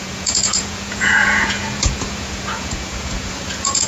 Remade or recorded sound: remade